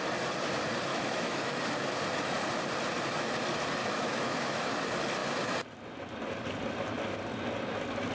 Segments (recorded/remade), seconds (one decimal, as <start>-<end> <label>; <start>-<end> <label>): 0.0-0.9 recorded; 0.9-1.6 remade; 1.6-3.8 recorded; 3.8-4.6 remade; 4.6-8.1 recorded